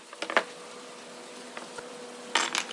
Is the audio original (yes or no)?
yes